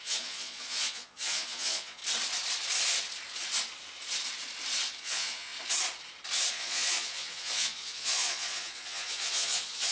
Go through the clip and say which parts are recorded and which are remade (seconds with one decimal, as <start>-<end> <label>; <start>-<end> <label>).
0.0-2.0 remade; 2.0-5.0 recorded; 5.0-5.5 remade; 5.5-6.5 recorded; 6.5-9.9 remade